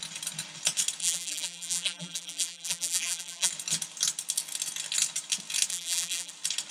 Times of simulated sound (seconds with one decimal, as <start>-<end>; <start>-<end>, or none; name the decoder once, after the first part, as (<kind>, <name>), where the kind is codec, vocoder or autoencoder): 1.0-3.5 (vocoder, BigVGAN v2); 5.7-6.3